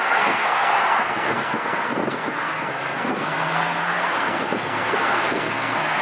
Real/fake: fake